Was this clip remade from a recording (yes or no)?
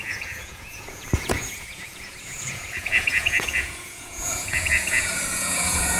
yes